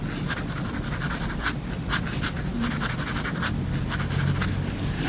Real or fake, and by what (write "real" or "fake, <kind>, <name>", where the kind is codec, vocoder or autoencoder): real